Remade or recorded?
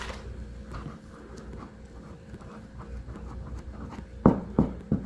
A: recorded